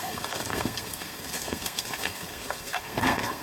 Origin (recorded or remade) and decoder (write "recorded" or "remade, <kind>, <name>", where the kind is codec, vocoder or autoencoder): remade, codec, SNAC